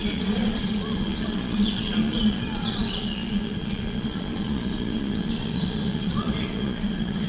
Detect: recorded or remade remade